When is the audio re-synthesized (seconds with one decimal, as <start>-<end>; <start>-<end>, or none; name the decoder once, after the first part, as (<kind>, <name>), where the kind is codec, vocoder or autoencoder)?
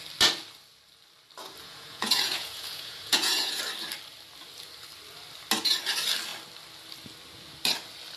1.6-3.6 (vocoder, Vocos)